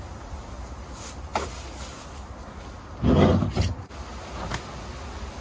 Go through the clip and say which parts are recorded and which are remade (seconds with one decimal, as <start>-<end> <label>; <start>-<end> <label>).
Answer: 0.0-5.4 recorded